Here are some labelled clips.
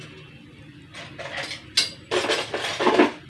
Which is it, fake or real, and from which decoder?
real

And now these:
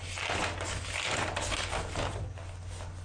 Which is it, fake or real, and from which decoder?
real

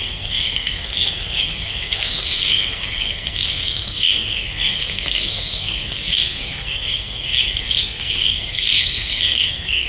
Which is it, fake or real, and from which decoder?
fake, codec, SNAC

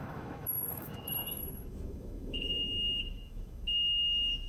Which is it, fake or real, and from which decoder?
fake, autoencoder, DAC-VAE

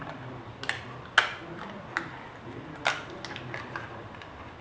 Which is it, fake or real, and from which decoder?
real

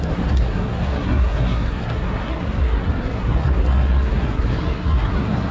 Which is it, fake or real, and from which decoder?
fake, codec, SNAC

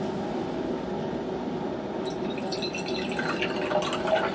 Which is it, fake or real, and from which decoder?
real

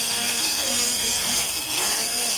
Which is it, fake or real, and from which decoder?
fake, codec, SNAC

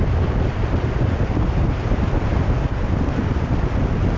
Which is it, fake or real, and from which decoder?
real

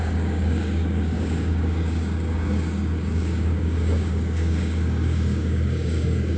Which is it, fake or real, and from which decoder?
fake, codec, DAC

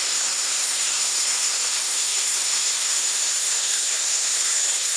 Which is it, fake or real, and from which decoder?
fake, codec, SNAC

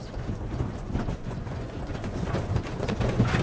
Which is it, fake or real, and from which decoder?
fake, vocoder, Vocos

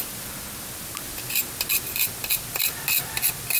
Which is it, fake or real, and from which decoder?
real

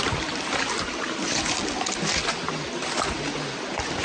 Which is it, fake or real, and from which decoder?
real